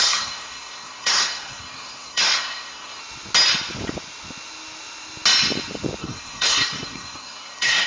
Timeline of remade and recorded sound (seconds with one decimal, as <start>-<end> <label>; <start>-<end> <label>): 0.0-3.0 remade; 3.0-6.0 recorded; 6.0-7.9 remade